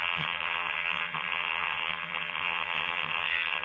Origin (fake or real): fake